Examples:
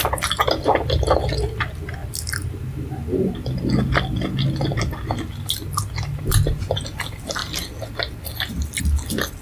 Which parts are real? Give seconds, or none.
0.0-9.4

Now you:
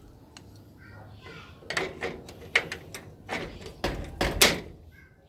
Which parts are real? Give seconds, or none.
0.0-5.3

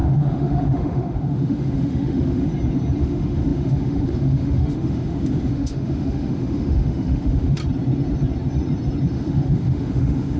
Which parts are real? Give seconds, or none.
2.5-3.0; 7.6-9.1

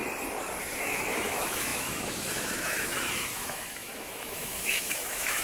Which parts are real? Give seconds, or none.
0.0-0.8

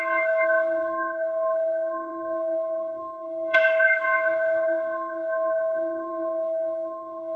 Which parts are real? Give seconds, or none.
none

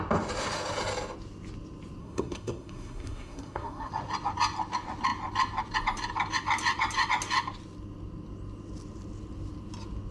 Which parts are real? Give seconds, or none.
0.0-2.0; 3.9-10.1